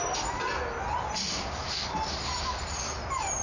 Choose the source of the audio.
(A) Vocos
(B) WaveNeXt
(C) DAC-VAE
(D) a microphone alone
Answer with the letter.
D